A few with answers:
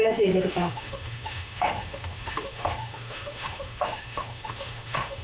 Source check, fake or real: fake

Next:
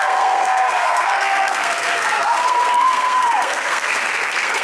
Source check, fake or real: fake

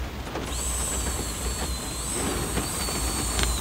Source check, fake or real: real